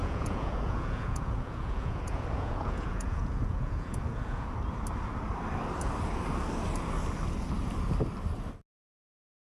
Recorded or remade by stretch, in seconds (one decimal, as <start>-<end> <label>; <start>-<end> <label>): 0.0-4.5 remade; 4.5-9.5 recorded